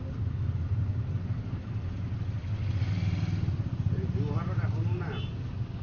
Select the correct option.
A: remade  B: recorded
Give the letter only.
B